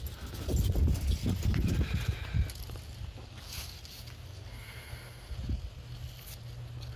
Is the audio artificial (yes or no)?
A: no